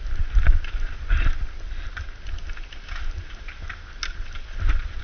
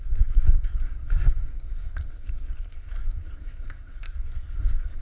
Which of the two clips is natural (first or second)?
first